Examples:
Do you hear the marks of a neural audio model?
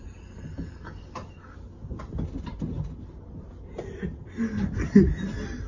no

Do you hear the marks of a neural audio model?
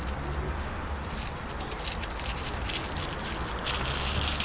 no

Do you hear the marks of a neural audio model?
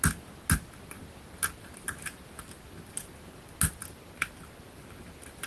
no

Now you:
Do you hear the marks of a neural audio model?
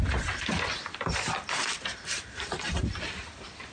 yes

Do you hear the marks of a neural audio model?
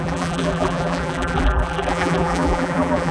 yes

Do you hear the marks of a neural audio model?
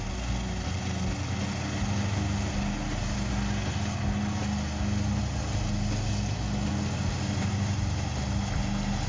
no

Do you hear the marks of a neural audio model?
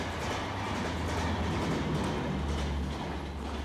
no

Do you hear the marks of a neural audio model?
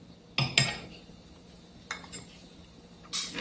no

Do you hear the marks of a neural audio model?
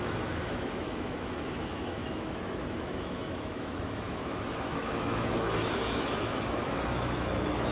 yes